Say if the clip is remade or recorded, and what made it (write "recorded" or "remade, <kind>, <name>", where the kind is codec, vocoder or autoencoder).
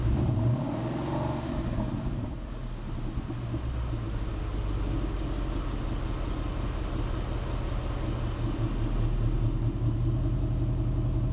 recorded